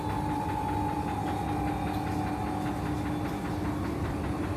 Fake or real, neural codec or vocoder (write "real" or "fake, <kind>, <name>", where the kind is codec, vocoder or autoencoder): real